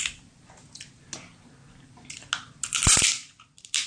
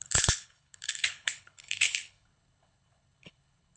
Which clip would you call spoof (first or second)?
second